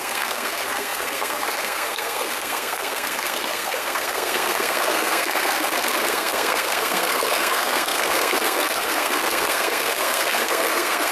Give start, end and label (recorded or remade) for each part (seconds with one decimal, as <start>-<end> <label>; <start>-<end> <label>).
0.0-11.1 remade